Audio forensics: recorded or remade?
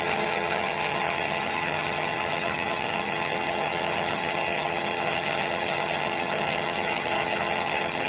remade